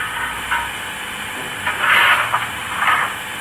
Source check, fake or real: real